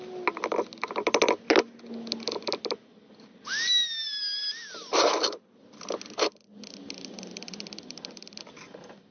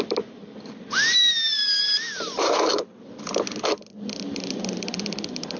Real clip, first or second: first